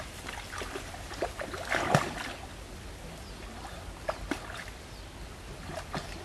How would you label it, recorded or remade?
recorded